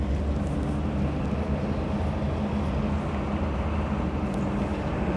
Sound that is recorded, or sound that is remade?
recorded